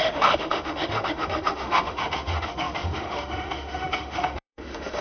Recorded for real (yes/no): no